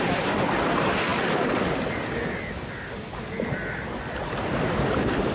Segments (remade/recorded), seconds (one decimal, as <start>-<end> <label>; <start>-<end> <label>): 0.0-5.3 recorded